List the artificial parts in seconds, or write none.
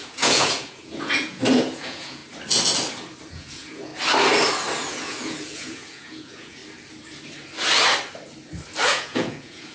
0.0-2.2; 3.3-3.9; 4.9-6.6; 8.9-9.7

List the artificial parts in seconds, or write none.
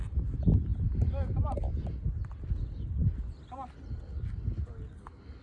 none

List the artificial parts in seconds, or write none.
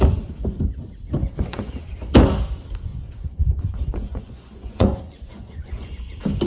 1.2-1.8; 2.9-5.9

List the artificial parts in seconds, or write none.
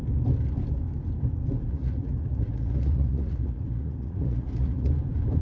1.7-4.9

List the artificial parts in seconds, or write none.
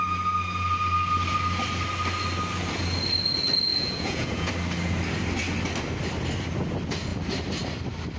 3.7-4.5